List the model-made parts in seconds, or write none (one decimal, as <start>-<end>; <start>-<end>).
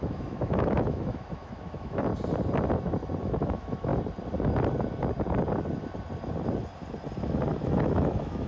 0.0-2.1; 3.2-3.9; 7.2-8.5